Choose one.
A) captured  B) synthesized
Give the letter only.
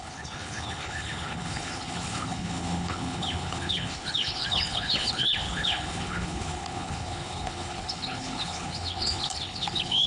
B